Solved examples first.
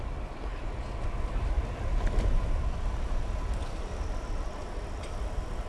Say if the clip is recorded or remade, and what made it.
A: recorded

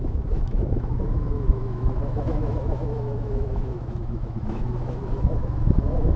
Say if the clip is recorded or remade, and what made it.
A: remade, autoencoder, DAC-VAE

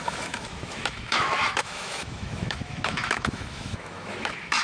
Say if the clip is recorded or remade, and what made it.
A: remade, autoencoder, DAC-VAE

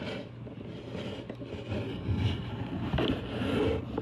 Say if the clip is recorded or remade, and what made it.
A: recorded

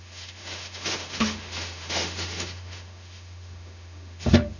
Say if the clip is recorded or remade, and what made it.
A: remade, autoencoder, DAC-VAE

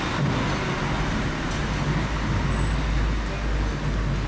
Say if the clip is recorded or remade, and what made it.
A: recorded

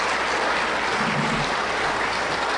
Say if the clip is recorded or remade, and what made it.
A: recorded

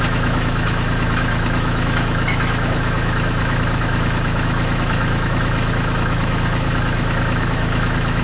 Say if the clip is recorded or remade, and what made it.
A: remade, autoencoder, DAC-VAE